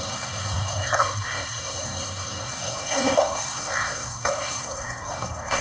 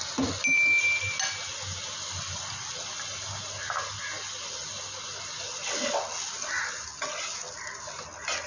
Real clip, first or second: second